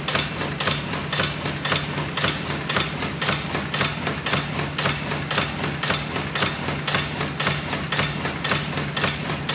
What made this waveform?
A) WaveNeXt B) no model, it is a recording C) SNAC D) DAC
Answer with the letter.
B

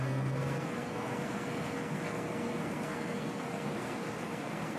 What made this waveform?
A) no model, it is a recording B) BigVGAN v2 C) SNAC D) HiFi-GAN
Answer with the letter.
C